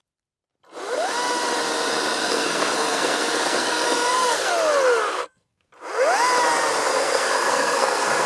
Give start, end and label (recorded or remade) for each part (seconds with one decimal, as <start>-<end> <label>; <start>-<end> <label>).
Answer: 0.0-2.2 recorded; 2.2-4.5 remade; 4.5-5.1 recorded; 5.1-5.7 remade; 5.7-6.9 recorded; 6.9-8.3 remade